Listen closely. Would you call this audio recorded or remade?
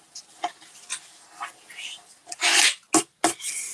recorded